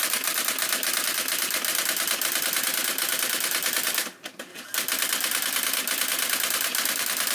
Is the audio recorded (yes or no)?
yes